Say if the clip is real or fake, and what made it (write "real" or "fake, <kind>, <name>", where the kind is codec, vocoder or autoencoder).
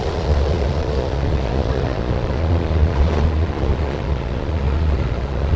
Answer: fake, vocoder, Vocos